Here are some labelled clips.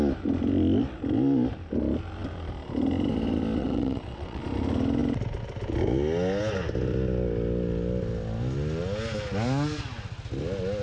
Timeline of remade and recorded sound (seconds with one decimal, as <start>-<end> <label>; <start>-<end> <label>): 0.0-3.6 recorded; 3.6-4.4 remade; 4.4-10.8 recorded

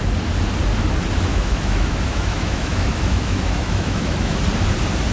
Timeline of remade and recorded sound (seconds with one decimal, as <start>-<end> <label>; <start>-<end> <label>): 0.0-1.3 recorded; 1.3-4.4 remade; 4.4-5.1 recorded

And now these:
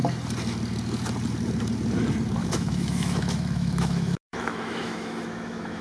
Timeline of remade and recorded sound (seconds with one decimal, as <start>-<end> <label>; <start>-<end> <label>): 0.0-2.4 recorded; 2.4-5.8 remade

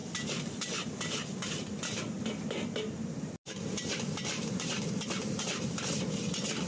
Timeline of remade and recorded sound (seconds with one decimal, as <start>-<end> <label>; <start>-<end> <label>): 0.0-2.8 recorded; 2.8-6.2 remade; 6.2-6.7 recorded

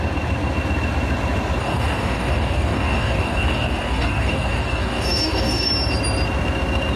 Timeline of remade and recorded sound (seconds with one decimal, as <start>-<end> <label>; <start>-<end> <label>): 0.0-1.6 recorded; 1.6-5.7 remade; 5.7-7.0 recorded

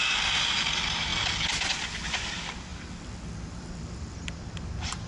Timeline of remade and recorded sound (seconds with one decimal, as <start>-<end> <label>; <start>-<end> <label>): 0.0-5.1 recorded

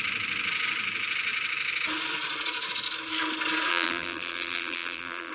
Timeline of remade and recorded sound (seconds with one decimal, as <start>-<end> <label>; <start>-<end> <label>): 0.0-3.7 recorded; 3.7-5.3 remade

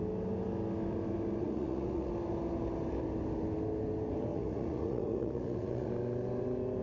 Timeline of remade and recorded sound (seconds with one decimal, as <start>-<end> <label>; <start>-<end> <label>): 0.0-1.4 recorded; 1.4-2.1 remade; 2.1-4.3 recorded; 4.3-5.9 remade; 5.9-6.8 recorded